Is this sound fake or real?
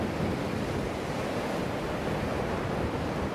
real